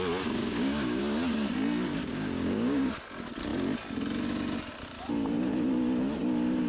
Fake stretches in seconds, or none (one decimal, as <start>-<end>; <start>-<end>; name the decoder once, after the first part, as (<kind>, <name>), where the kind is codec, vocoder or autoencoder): 0.4-1.0 (codec, DAC); 1.9-2.9